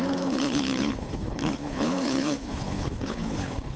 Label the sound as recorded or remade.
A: remade